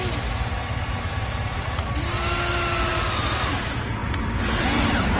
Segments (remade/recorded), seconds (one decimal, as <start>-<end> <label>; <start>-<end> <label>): 0.0-5.2 recorded